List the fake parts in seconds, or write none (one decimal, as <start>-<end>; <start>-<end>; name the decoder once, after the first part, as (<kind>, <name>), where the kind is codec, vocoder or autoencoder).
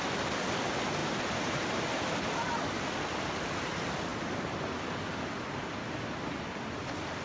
1.0-2.9 (vocoder, BigVGAN v2)